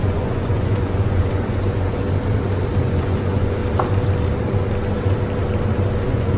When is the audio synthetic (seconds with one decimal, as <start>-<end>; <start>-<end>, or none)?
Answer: 0.0-2.0; 2.8-3.6; 6.0-6.4